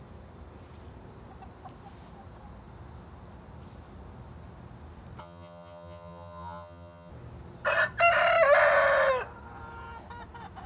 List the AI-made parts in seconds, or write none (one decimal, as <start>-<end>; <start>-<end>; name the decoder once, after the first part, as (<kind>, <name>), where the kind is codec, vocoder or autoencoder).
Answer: 5.2-7.1 (vocoder, HiFi-GAN)